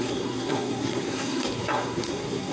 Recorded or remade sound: remade